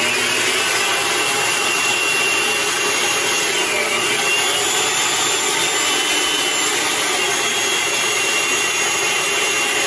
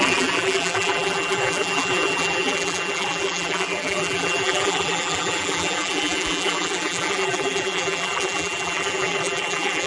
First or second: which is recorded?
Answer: first